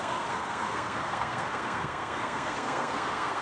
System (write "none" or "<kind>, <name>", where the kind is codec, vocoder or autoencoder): codec, SNAC